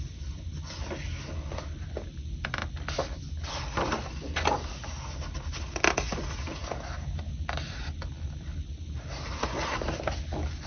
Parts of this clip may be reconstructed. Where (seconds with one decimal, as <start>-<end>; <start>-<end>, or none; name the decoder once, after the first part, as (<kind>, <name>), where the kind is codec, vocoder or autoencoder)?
none